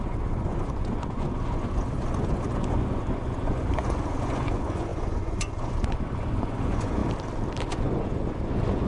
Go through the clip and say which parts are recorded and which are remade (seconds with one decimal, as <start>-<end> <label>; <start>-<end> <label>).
0.0-7.0 remade; 7.0-7.7 recorded; 7.7-8.9 remade